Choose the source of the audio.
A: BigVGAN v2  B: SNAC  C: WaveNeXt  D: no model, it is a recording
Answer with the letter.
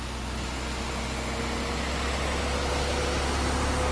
D